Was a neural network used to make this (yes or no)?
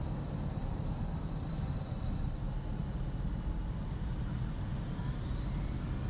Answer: no